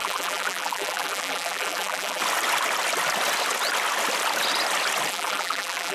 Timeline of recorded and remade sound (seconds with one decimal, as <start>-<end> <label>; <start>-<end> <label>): 0.0-2.2 remade; 2.2-5.1 recorded; 5.1-5.9 remade